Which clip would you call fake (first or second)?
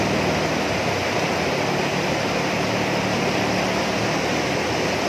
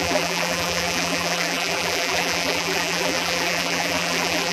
second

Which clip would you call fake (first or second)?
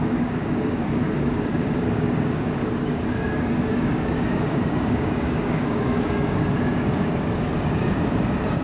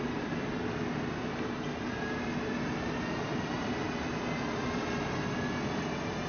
first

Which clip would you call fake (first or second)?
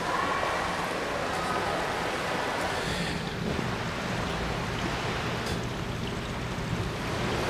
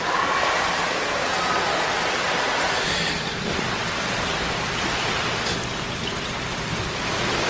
second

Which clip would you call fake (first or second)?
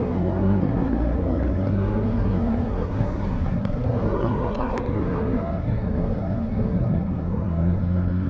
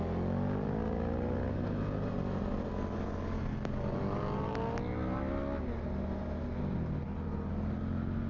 first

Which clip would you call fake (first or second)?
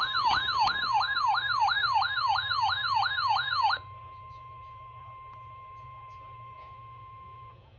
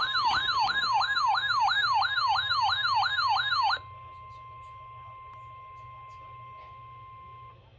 first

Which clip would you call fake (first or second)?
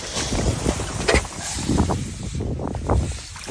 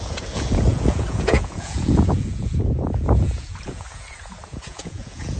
second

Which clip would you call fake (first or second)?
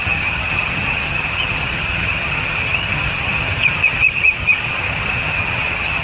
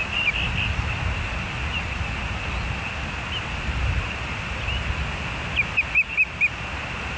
first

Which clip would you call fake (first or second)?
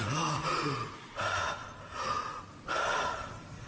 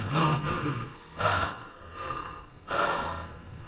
second